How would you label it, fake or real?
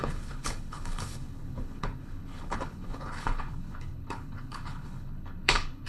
fake